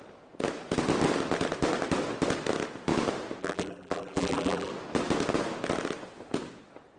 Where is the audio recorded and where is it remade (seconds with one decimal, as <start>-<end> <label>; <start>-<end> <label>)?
0.0-3.4 recorded; 3.4-4.7 remade; 4.7-7.0 recorded